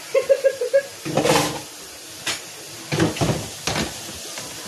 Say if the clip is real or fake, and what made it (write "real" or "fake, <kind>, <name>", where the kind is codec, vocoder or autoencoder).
real